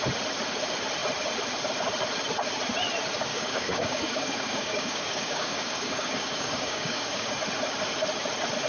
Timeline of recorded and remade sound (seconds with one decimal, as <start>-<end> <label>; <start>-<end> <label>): 0.0-3.3 recorded; 3.3-7.3 remade; 7.3-8.7 recorded